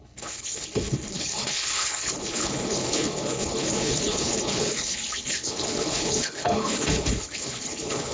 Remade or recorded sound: remade